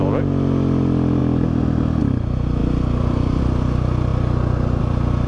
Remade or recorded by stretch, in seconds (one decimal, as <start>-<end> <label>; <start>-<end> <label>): 0.0-5.3 recorded